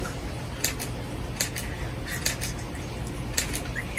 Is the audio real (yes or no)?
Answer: yes